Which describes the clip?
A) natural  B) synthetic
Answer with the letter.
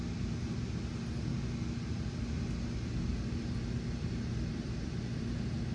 A